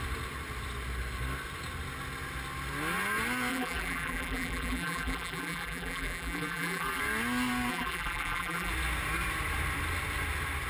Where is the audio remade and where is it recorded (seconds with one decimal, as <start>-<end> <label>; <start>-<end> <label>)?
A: 0.0-3.5 recorded; 3.5-7.0 remade; 7.0-7.7 recorded; 7.7-8.7 remade; 8.7-10.7 recorded